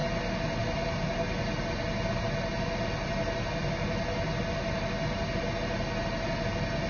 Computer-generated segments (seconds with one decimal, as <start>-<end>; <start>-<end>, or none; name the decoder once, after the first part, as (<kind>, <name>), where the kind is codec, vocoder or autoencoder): none